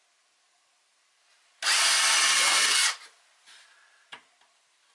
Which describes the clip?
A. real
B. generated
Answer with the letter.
A